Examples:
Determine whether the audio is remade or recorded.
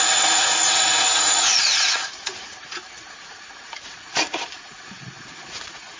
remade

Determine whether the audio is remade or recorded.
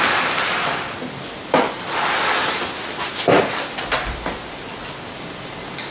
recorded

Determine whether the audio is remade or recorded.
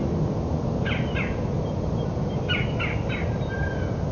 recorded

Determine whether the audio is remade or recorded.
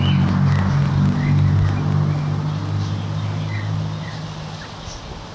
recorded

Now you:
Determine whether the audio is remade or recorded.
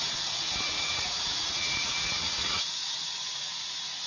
remade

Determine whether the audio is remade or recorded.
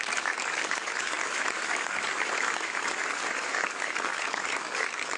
remade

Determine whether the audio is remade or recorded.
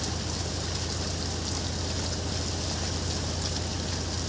recorded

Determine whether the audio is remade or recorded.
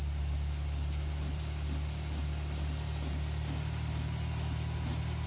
recorded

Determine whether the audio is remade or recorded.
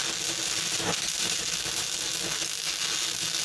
recorded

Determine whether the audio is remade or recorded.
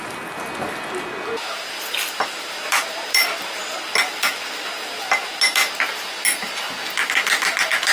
recorded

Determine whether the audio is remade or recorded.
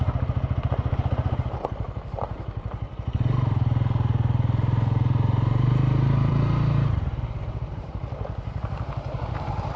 remade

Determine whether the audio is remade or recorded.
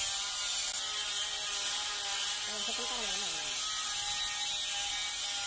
recorded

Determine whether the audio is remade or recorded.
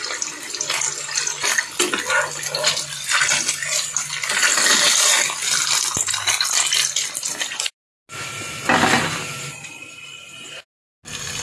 recorded